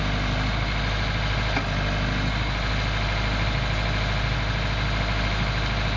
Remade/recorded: recorded